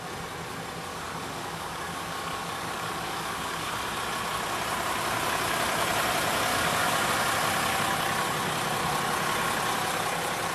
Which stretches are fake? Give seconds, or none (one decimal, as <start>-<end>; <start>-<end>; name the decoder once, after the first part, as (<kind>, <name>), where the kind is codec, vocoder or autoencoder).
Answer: 0.9-3.7 (codec, DAC); 6.5-7.1